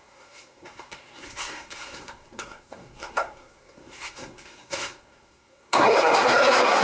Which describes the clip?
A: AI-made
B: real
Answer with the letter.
A